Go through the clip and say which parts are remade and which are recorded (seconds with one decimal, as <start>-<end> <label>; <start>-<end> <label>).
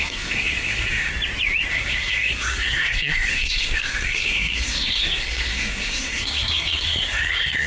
0.0-1.1 remade; 1.1-1.7 recorded; 1.7-7.7 remade